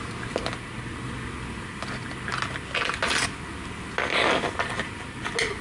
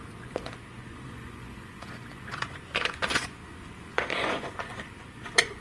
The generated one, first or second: second